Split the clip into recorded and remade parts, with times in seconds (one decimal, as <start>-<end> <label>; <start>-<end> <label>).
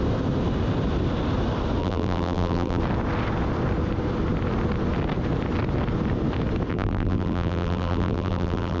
0.0-1.8 recorded; 1.8-2.8 remade; 2.8-6.7 recorded; 6.7-8.8 remade